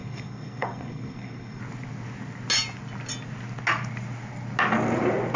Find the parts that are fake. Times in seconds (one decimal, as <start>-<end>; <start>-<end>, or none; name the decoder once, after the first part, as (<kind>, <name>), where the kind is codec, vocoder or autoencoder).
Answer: 0.0-1.6 (codec, SNAC)